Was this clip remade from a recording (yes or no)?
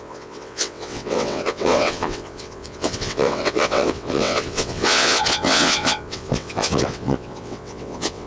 yes